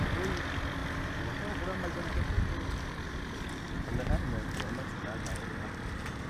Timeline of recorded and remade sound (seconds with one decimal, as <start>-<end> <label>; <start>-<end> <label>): 0.0-6.3 recorded